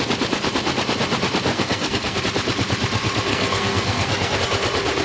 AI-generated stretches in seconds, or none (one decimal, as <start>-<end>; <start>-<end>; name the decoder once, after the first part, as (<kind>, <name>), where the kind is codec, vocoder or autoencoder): 1.5-2.2 (codec, SNAC); 3.3-4.4